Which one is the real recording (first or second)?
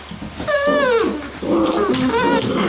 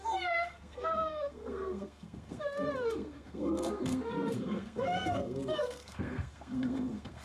first